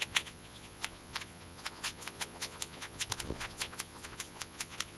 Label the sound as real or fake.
fake